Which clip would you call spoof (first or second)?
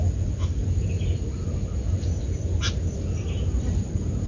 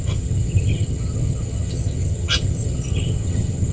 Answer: second